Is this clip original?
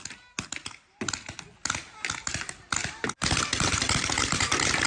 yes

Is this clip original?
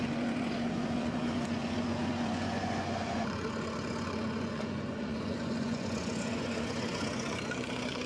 no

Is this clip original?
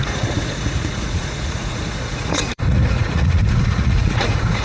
no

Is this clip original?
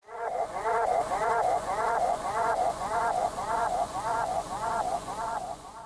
no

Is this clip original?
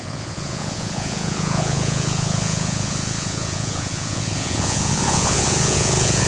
no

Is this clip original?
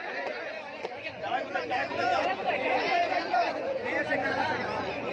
no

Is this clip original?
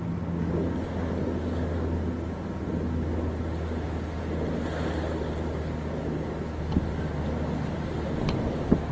yes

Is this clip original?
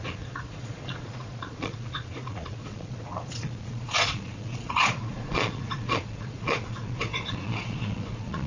no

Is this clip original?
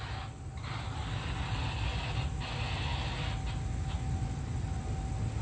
yes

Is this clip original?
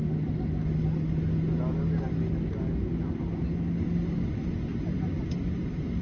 yes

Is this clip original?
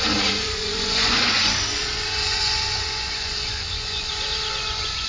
no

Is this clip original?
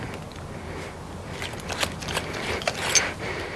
yes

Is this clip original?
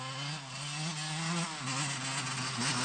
yes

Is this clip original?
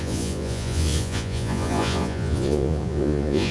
no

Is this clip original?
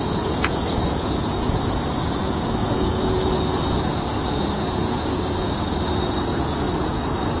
no